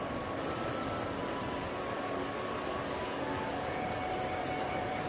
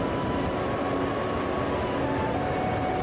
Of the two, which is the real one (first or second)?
second